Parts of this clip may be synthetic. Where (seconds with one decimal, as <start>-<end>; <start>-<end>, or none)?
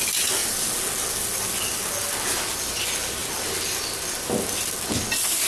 none